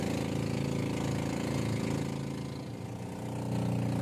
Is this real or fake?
real